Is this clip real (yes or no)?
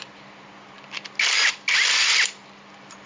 yes